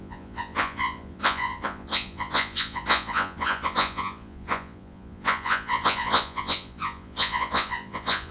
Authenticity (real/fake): fake